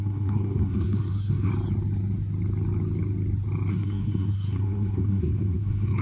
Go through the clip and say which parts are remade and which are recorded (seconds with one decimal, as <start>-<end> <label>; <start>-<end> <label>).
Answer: 0.0-1.5 remade; 1.5-3.7 recorded; 3.7-6.0 remade